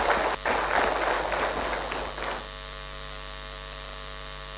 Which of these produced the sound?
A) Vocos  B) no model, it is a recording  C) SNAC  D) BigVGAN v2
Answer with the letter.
B